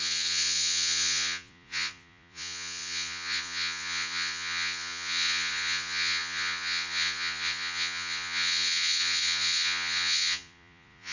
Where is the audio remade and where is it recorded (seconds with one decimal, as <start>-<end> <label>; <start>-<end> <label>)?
0.0-11.1 remade